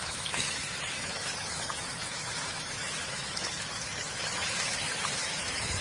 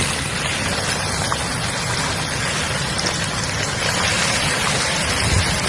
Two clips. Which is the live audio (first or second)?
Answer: second